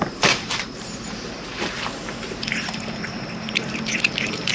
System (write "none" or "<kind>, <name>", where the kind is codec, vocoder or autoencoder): vocoder, BigVGAN v2